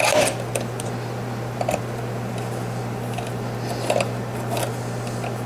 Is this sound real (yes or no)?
no